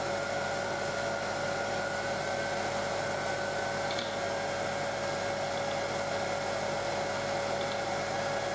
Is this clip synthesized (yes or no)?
no